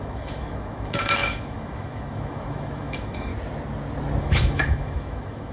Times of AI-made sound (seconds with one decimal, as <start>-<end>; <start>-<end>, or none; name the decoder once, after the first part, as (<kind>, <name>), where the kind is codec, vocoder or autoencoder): 0.0-3.3 (autoencoder, DAC-VAE); 4.2-5.5